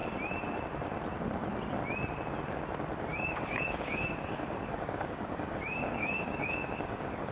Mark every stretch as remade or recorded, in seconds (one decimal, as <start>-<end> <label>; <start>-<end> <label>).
0.0-3.1 recorded; 3.1-7.3 remade